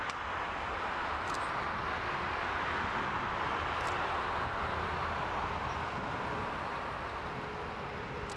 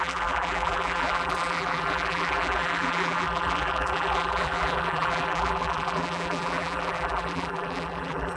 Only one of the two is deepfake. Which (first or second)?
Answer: second